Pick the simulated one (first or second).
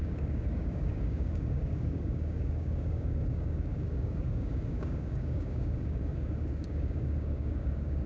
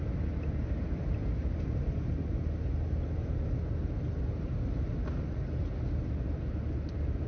first